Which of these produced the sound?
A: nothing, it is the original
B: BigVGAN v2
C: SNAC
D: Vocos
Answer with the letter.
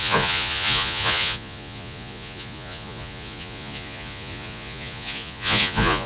D